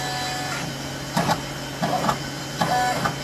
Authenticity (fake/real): real